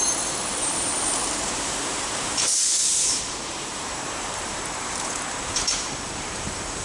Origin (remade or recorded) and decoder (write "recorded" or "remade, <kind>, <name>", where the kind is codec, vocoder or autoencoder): remade, vocoder, BigVGAN v2